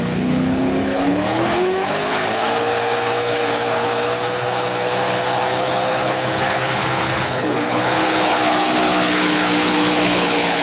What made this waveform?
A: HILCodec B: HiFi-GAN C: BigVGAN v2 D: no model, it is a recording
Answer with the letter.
A